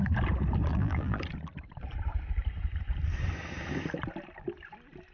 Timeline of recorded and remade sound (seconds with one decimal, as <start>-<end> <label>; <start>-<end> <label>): 0.0-0.7 recorded; 0.7-1.2 remade; 1.2-5.1 recorded